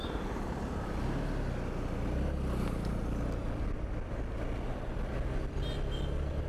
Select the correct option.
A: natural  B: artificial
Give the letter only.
A